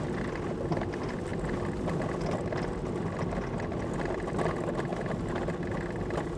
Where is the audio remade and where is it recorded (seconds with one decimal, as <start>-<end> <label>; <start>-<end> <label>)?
0.0-6.4 recorded